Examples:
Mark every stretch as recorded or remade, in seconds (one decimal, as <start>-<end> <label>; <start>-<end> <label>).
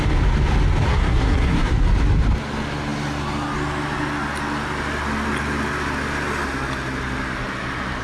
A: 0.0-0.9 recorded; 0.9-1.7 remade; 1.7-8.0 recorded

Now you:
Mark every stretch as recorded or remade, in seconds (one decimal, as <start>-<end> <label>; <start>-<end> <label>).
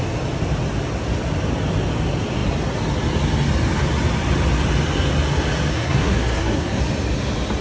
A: 0.0-5.7 recorded; 5.7-6.8 remade; 6.8-7.6 recorded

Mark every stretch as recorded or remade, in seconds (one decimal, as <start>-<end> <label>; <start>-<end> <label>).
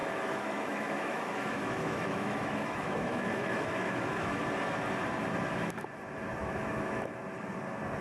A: 0.0-4.4 remade; 4.4-6.4 recorded; 6.4-7.1 remade; 7.1-8.0 recorded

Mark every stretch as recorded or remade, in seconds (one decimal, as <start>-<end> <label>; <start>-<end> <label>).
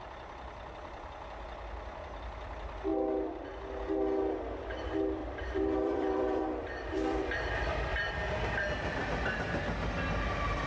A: 0.0-5.2 recorded; 5.2-8.1 remade; 8.1-10.7 recorded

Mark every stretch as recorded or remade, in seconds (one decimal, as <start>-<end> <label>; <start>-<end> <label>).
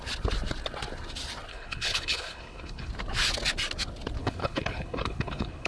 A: 0.0-1.5 recorded; 1.5-2.9 remade; 2.9-4.2 recorded; 4.2-5.7 remade